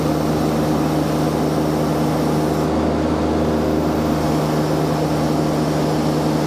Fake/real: real